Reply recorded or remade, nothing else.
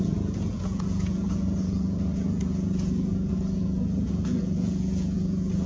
remade